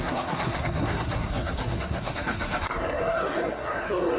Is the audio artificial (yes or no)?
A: yes